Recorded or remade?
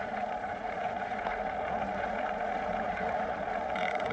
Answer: remade